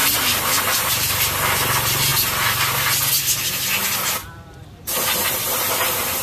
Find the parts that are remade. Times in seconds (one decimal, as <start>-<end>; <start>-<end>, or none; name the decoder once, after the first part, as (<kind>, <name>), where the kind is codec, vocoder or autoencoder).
4.2-5.4 (vocoder, BigVGAN v2)